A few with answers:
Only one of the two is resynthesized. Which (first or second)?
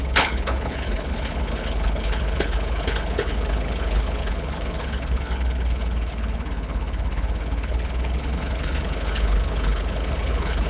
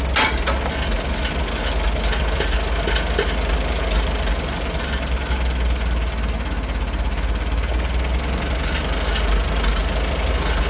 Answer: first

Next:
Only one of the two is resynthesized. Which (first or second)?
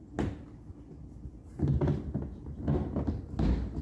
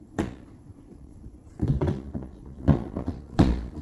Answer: second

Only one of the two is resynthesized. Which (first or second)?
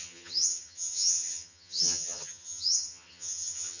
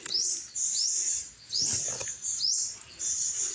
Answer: first